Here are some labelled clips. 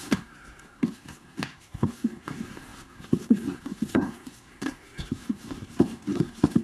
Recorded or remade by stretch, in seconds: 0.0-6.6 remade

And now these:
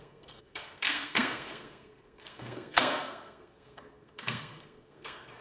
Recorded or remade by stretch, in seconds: 0.0-5.4 remade

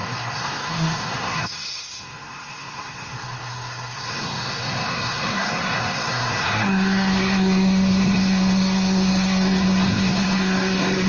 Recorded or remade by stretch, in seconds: 0.0-11.1 remade

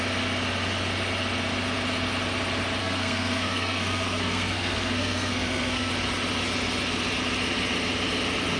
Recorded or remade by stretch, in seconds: 0.0-2.8 recorded; 2.8-5.9 remade; 5.9-8.6 recorded

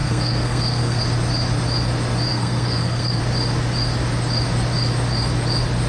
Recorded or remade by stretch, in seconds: 0.0-1.0 remade; 1.0-2.3 recorded; 2.3-3.2 remade; 3.2-5.9 recorded

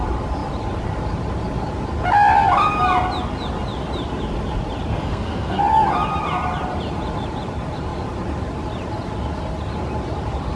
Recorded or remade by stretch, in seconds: 0.0-4.9 recorded; 4.9-5.6 remade; 5.6-10.6 recorded

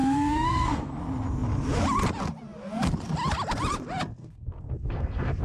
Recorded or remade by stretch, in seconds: 0.0-0.9 remade; 0.9-4.2 recorded; 4.2-5.4 remade